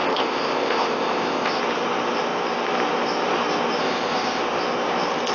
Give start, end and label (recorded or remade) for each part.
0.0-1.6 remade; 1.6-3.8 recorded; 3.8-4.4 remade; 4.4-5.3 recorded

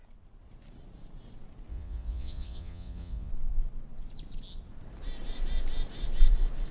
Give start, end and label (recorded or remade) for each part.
0.0-1.7 recorded; 1.7-3.3 remade; 3.3-6.7 recorded